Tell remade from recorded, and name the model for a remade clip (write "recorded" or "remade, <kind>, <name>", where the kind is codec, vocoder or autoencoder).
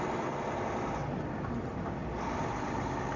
recorded